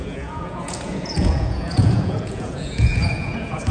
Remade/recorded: remade